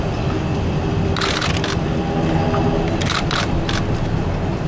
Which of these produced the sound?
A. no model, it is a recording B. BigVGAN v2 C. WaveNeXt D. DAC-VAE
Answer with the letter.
A